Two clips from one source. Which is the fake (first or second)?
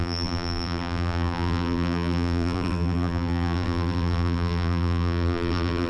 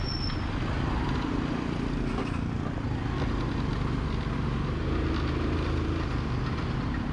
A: first